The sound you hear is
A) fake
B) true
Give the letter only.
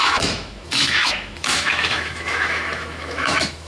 A